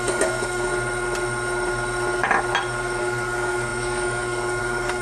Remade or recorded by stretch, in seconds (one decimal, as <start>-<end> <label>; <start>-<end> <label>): 0.0-0.7 remade; 0.7-3.0 recorded; 3.0-5.0 remade